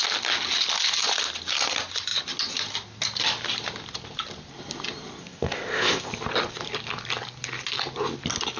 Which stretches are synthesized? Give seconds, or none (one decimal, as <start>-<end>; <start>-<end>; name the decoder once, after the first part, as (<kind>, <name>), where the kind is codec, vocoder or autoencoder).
5.2-6.1 (codec, ZipCodec)